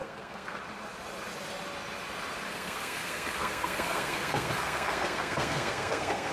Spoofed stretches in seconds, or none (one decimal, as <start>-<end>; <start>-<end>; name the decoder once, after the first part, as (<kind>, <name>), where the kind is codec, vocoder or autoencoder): 0.0-0.6 (codec, SNAC); 2.5-6.3

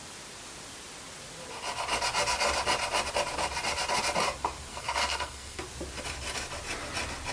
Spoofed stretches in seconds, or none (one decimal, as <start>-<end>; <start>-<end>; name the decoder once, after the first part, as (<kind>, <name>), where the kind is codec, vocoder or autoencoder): 4.7-5.6 (codec, SNAC)

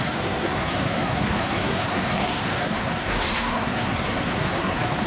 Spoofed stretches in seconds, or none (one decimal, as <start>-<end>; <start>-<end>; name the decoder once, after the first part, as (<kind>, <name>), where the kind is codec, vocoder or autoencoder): 0.0-5.1 (codec, SNAC)

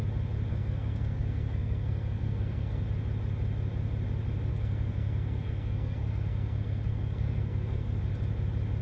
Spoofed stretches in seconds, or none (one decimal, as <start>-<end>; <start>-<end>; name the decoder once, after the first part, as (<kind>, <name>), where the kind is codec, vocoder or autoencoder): 0.5-2.8 (codec, SNAC); 4.5-8.0

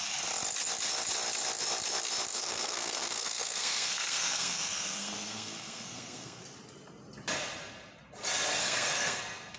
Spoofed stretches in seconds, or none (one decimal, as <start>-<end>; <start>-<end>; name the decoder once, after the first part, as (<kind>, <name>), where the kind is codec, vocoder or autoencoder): 2.3-6.4 (codec, SNAC); 8.6-9.2

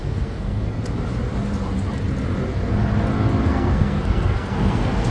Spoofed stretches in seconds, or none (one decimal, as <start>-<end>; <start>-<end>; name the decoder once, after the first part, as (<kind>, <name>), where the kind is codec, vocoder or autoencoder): 0.0-0.8 (codec, SNAC); 3.4-5.1